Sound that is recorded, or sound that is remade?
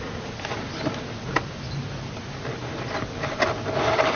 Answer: recorded